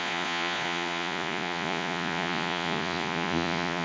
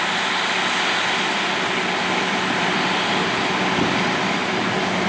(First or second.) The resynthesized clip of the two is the first